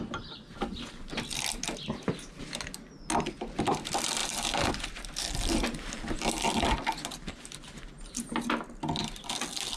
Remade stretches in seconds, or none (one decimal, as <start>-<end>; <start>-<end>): none